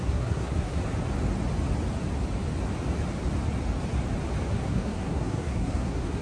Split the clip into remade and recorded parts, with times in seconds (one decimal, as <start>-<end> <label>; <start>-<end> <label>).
0.0-0.8 remade; 0.8-4.5 recorded; 4.5-6.2 remade